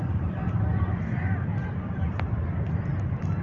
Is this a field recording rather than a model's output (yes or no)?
yes